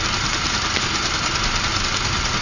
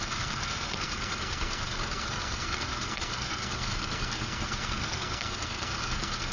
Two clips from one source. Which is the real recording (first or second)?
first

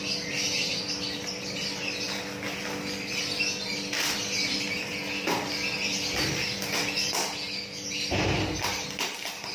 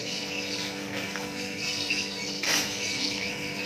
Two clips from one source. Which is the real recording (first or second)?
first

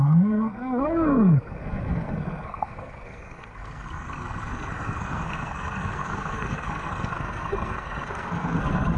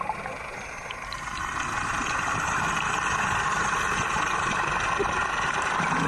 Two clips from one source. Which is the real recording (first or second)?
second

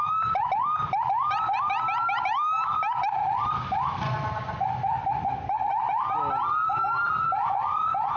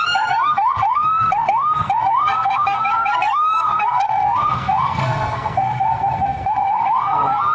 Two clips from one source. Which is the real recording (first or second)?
first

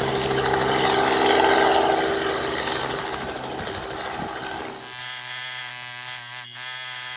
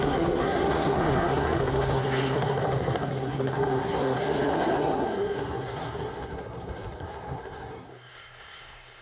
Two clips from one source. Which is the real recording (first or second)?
first